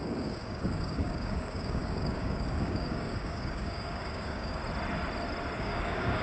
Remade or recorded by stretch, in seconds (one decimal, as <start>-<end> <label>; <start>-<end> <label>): 0.0-4.6 remade; 4.6-5.6 recorded; 5.6-6.2 remade